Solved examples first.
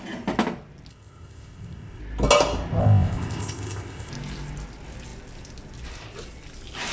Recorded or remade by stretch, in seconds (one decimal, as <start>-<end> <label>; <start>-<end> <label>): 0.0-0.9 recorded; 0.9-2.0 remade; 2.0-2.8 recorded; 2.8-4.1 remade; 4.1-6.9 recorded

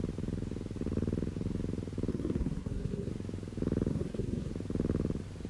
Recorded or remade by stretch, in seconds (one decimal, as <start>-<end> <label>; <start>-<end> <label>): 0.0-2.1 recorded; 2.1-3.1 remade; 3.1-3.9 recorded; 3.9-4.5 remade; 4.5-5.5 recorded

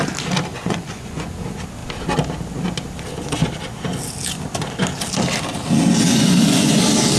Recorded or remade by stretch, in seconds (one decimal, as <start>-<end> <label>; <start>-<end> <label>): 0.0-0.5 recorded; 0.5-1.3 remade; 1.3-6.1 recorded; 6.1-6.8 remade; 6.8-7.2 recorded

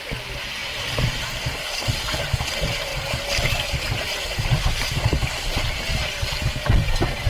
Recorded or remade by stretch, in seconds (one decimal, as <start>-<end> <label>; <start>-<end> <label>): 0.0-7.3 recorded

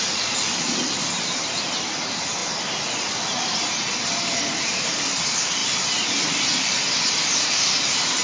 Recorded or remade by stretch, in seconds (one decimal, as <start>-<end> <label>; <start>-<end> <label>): 0.0-2.4 remade; 2.4-4.1 recorded; 4.1-5.6 remade; 5.6-6.6 recorded; 6.6-8.2 remade